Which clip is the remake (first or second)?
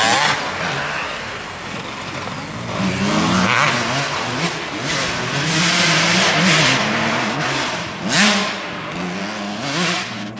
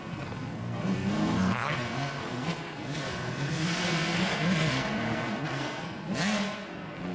second